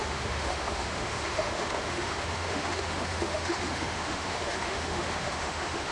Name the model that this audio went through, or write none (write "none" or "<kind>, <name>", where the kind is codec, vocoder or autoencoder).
autoencoder, DAC-VAE